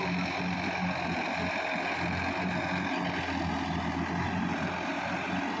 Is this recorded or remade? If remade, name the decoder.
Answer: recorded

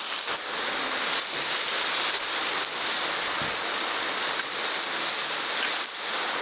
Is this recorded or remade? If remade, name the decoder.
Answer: recorded